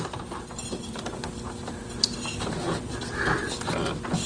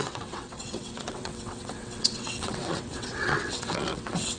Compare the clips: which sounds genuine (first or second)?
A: first